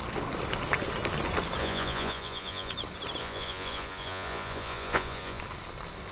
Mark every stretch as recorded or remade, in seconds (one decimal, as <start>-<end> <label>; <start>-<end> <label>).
0.0-1.6 recorded; 1.6-2.7 remade; 2.7-3.2 recorded; 3.2-5.4 remade; 5.4-6.1 recorded